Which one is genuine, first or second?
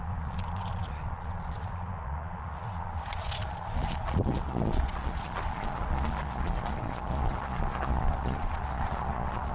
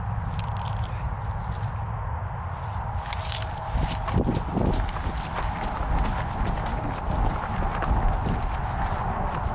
second